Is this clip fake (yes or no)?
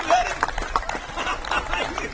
yes